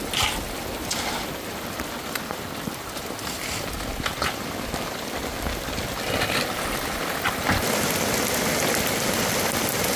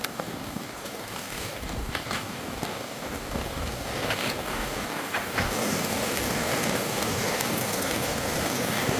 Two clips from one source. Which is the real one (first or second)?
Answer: first